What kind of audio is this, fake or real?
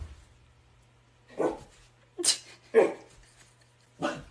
real